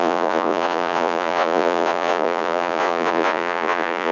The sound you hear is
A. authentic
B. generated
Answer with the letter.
B